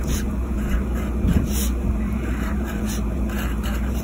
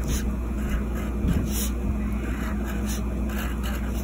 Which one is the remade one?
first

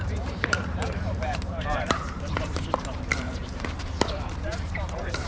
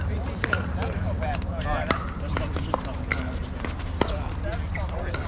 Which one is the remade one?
first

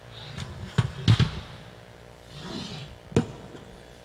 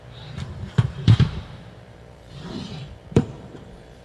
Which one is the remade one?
second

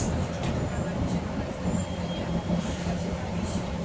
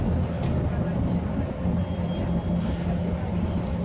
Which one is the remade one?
first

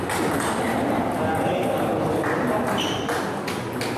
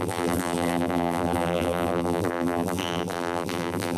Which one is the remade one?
second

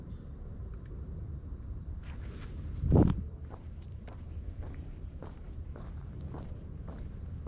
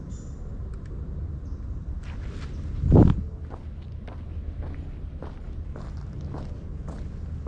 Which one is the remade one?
first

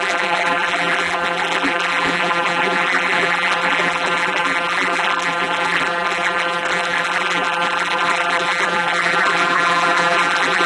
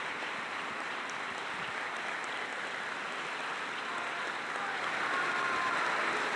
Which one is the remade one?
first